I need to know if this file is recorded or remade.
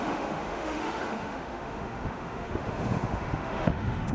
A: remade